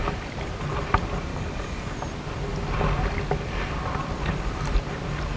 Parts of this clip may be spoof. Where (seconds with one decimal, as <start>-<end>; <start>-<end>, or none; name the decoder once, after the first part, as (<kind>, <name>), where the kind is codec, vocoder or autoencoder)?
1.3-1.8 (codec, DAC)